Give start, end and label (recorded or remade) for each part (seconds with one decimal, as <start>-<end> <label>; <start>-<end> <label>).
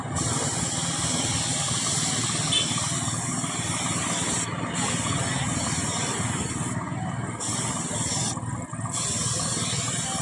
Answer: 0.0-10.2 recorded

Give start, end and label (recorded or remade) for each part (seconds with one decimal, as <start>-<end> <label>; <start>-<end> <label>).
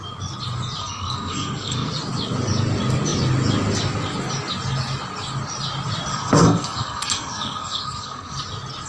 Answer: 0.0-0.8 recorded; 0.8-1.9 remade; 1.9-6.1 recorded; 6.1-8.4 remade; 8.4-8.9 recorded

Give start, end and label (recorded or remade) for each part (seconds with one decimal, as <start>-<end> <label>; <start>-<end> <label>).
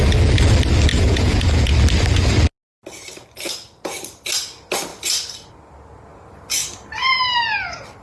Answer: 0.0-0.9 recorded; 0.9-1.7 remade; 1.7-8.0 recorded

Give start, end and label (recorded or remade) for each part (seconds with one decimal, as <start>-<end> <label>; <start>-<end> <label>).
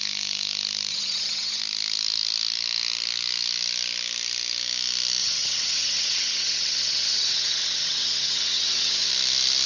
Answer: 0.0-0.9 recorded; 0.9-1.6 remade; 1.6-5.2 recorded; 5.2-9.1 remade; 9.1-9.7 recorded